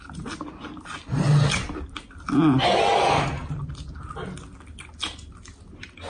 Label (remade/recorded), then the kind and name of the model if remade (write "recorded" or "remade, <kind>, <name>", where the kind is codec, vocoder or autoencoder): recorded